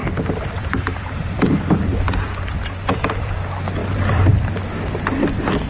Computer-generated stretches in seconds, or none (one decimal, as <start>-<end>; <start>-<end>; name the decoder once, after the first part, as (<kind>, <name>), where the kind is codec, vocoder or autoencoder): 0.0-3.4 (vocoder, BigVGAN v2); 3.8-4.6